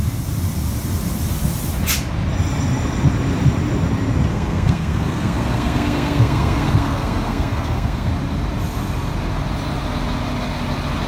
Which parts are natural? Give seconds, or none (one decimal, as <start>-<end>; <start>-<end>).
0.0-4.3; 8.1-11.1